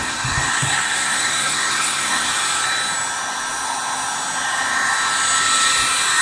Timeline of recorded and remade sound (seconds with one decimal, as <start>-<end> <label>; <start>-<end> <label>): 0.0-2.3 remade; 2.3-6.2 recorded

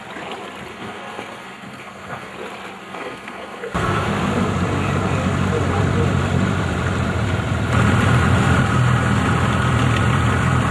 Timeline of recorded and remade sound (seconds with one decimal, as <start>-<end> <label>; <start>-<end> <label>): 0.0-0.7 recorded; 0.7-2.3 remade; 2.3-2.8 recorded; 2.8-4.1 remade; 4.1-10.7 recorded

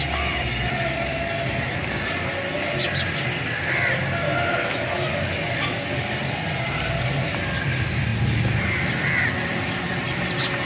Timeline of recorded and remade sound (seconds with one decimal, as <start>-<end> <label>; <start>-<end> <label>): 0.0-10.7 recorded

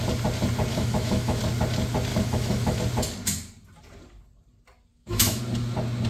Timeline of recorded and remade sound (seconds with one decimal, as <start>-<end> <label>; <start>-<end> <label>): 0.0-0.7 recorded; 0.7-1.4 remade; 1.4-2.1 recorded; 2.1-2.8 remade; 2.8-4.9 recorded; 4.9-5.4 remade; 5.4-6.1 recorded

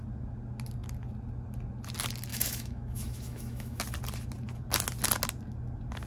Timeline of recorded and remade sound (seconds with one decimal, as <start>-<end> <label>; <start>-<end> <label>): 0.0-2.3 recorded; 2.3-3.8 remade; 3.8-6.1 recorded

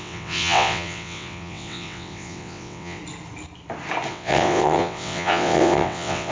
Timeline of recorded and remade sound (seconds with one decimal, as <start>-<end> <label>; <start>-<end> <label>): 0.0-3.0 remade; 3.0-4.1 recorded; 4.1-6.3 remade

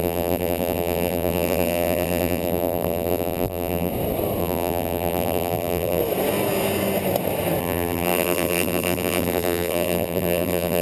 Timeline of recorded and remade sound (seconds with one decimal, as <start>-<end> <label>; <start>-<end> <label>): 0.0-3.9 remade; 3.9-4.4 recorded; 4.4-6.0 remade; 6.0-7.6 recorded; 7.6-10.8 remade